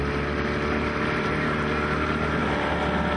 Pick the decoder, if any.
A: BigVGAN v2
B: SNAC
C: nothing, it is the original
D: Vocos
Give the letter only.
C